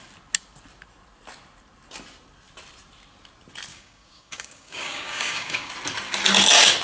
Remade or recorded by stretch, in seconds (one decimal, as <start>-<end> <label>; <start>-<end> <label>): 0.0-3.7 recorded; 3.7-5.7 remade; 5.7-6.8 recorded